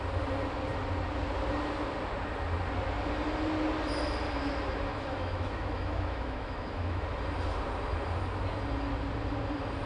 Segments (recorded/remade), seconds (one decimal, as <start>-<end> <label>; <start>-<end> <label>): 0.0-4.9 recorded; 4.9-7.0 remade; 7.0-9.9 recorded